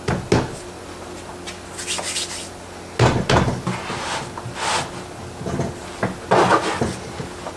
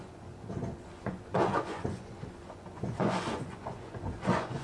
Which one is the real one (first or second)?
first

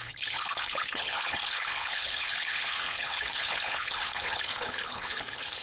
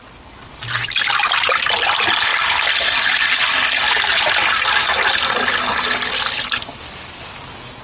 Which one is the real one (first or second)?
second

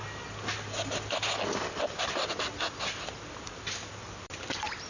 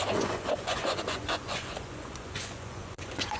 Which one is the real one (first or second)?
first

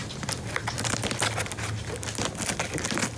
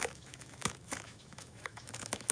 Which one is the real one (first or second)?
first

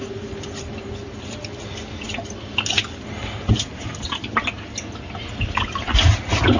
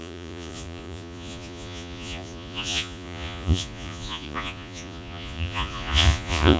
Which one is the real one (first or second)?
first